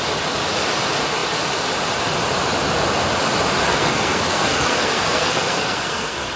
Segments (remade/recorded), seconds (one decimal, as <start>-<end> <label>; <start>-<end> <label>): 0.0-3.7 recorded; 3.7-6.4 remade